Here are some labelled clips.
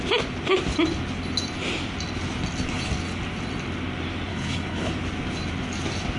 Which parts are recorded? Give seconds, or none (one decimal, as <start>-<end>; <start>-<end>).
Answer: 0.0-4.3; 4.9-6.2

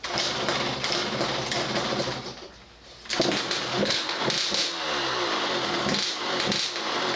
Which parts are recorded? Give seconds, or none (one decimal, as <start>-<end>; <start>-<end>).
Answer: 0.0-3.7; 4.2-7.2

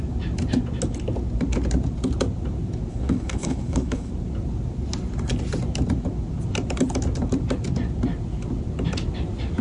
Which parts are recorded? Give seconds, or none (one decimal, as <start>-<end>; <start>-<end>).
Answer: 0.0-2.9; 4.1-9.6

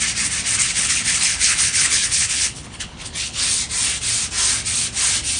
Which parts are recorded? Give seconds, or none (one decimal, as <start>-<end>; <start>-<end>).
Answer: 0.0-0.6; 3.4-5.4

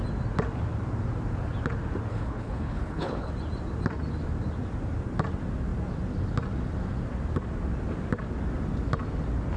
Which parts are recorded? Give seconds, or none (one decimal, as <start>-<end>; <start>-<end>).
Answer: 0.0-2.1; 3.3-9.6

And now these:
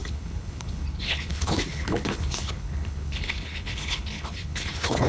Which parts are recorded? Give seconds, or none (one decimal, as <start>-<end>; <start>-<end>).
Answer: none